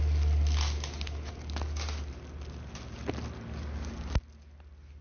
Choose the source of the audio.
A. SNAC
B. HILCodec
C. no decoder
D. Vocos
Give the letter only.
C